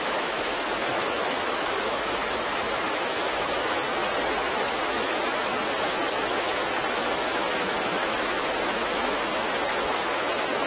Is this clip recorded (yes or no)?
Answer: no